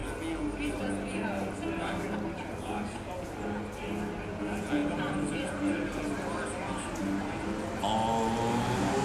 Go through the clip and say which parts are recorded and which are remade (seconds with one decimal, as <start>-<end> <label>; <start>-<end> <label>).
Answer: 0.0-9.0 recorded